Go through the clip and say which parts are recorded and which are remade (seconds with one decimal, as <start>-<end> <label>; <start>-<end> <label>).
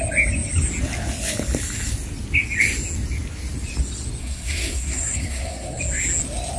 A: 0.0-4.2 recorded; 4.2-5.8 remade; 5.8-6.6 recorded